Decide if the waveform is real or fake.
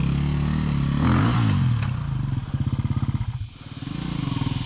real